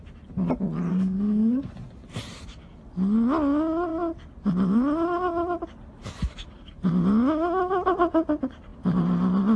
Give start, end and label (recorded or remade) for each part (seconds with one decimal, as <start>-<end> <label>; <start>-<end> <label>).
0.0-0.9 recorded; 0.9-1.7 remade; 1.7-9.6 recorded